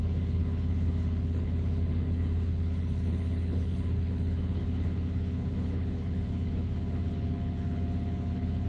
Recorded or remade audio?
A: remade